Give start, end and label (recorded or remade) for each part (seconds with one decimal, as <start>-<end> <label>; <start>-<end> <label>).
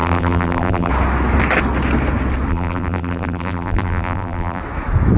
0.0-0.9 remade; 0.9-2.5 recorded; 2.5-4.6 remade; 4.6-5.2 recorded